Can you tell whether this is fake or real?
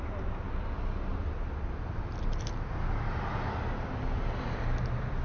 real